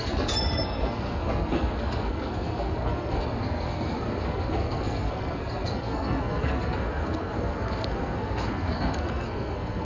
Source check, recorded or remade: remade